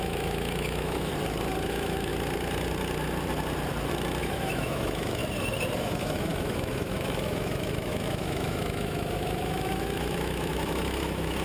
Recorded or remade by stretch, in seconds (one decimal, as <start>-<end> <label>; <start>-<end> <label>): 0.0-1.1 remade; 1.1-1.7 recorded; 1.7-2.1 remade; 2.1-4.2 recorded; 4.2-5.2 remade; 5.2-5.8 recorded; 5.8-11.4 remade